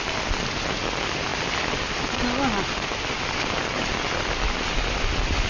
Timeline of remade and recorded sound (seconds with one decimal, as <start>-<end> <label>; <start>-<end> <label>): 0.0-5.5 recorded